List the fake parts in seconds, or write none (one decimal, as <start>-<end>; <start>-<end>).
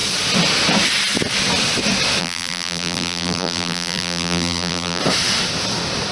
2.2-5.0